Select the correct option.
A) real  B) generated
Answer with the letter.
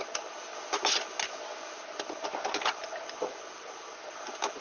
A